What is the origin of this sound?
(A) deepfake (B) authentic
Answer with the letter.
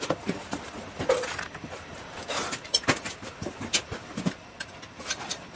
B